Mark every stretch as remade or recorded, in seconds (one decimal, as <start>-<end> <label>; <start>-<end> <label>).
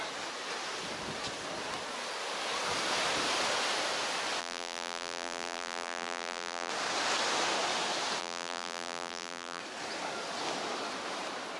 0.0-4.4 recorded; 4.4-6.7 remade; 6.7-8.2 recorded; 8.2-9.6 remade; 9.6-11.6 recorded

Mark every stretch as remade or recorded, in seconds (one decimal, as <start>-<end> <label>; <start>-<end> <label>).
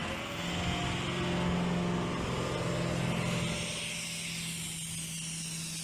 0.0-5.8 recorded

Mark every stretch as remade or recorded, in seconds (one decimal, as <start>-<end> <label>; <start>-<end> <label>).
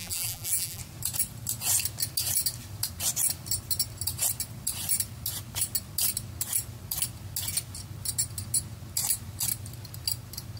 0.0-0.8 remade; 0.8-10.6 recorded